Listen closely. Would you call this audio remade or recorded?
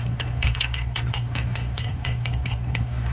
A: remade